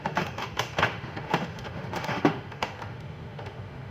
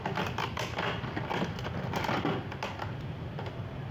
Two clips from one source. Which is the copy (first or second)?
first